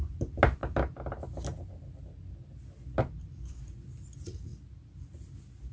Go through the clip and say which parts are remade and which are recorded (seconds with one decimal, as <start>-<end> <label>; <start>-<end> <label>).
0.0-5.7 recorded